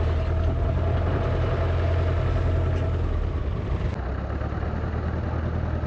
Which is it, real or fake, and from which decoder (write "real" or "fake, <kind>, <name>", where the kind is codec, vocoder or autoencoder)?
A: real